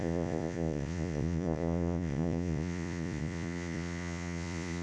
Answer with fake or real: fake